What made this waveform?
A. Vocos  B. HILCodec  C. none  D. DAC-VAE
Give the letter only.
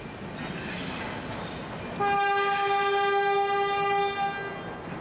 C